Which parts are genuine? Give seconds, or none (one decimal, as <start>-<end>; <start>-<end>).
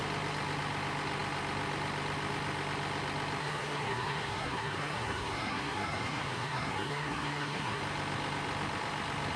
0.0-3.4; 7.8-9.4